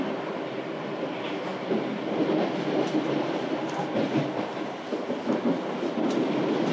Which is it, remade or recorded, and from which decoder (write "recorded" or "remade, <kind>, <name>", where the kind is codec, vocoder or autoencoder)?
recorded